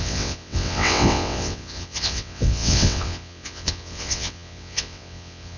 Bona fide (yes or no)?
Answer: no